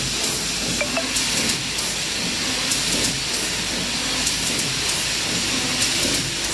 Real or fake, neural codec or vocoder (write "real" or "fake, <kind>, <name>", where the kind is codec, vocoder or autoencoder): real